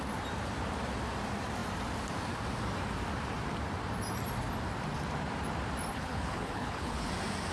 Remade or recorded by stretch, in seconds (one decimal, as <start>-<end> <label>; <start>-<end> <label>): 0.0-5.9 recorded; 5.9-7.1 remade; 7.1-7.5 recorded